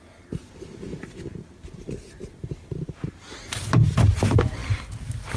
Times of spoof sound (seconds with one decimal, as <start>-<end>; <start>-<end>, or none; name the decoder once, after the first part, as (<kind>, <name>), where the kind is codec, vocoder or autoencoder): none